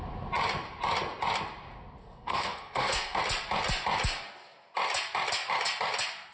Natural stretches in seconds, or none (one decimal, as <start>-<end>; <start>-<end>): 0.0-2.0; 3.2-6.3